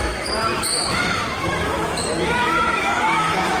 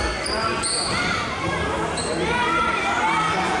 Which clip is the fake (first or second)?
first